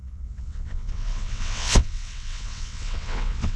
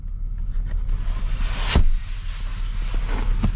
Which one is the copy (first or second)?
first